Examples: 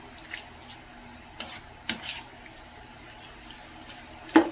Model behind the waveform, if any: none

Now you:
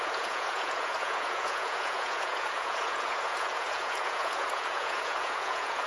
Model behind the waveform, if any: vocoder, Vocos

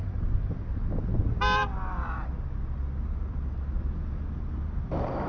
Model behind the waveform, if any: none